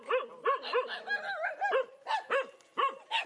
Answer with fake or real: real